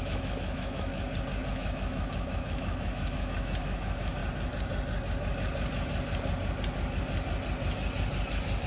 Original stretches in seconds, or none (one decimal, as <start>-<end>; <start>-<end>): 0.9-1.5; 4.2-8.7